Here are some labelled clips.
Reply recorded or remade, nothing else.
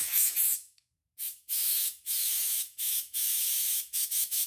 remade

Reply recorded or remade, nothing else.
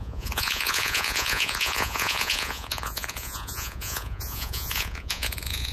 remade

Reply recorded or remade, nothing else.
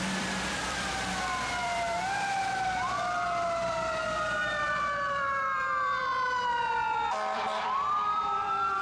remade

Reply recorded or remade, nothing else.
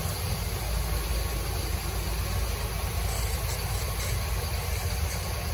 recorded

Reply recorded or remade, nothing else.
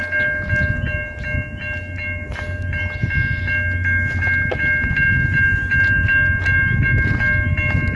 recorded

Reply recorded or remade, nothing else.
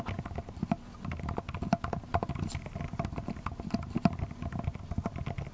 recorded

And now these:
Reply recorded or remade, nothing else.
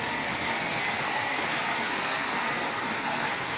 remade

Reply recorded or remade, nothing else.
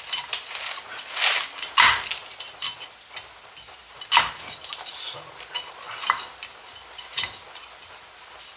recorded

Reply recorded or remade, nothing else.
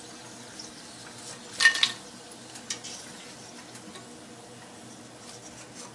recorded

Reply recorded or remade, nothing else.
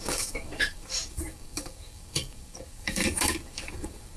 remade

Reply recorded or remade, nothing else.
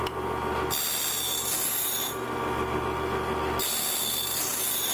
recorded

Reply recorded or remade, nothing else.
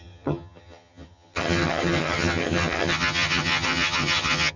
remade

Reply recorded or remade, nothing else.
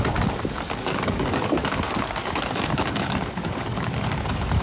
remade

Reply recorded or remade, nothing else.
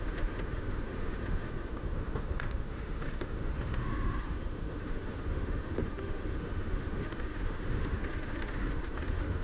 remade